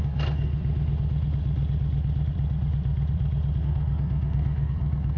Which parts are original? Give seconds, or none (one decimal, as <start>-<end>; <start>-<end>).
0.5-3.6